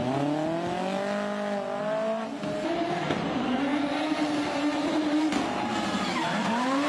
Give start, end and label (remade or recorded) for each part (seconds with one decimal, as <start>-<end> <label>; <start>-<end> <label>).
0.0-6.9 recorded